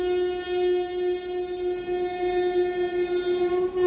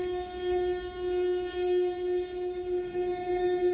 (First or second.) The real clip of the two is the first